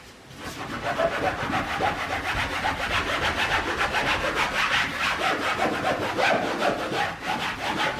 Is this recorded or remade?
recorded